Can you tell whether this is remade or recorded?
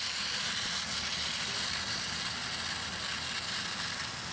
recorded